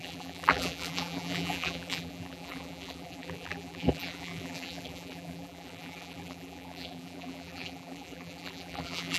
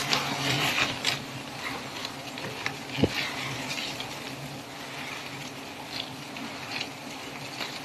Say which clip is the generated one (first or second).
first